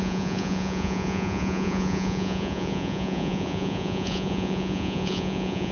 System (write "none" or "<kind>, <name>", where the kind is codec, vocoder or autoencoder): vocoder, Vocos